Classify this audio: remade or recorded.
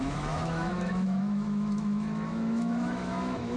remade